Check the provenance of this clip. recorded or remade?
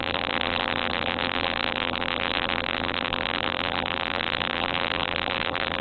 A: remade